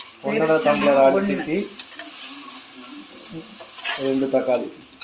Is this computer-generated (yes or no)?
no